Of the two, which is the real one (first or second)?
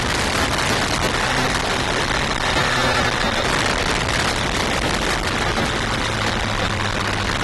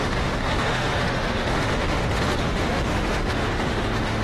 first